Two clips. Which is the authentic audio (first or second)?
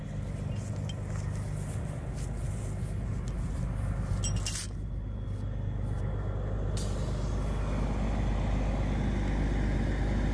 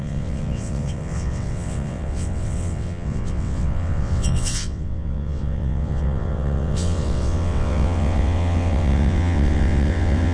first